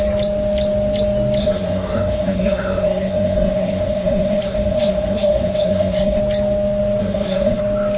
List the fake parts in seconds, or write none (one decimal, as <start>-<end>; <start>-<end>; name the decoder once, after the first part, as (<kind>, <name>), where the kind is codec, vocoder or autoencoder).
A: 1.4-6.2 (codec, SNAC); 7.0-7.6